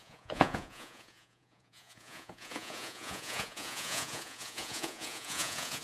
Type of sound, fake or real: fake